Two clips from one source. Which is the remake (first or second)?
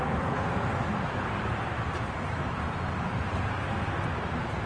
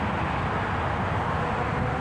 first